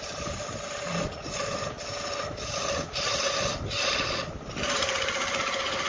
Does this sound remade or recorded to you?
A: recorded